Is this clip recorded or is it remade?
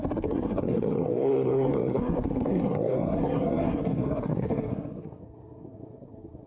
remade